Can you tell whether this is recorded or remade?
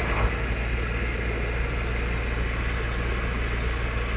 recorded